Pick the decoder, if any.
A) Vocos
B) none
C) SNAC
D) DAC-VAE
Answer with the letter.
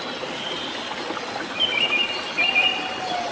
B